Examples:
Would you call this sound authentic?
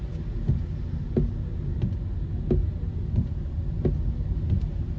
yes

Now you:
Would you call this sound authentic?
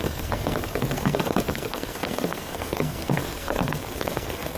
no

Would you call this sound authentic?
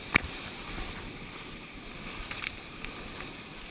yes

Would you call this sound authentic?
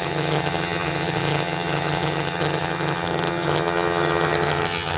no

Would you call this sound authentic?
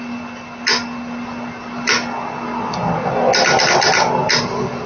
yes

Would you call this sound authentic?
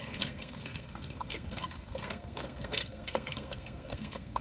no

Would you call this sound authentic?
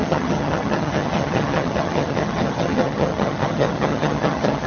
no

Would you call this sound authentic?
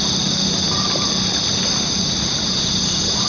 yes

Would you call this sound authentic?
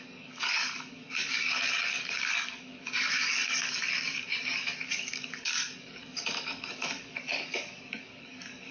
no